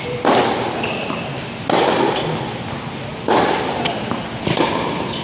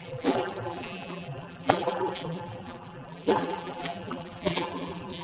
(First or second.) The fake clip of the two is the second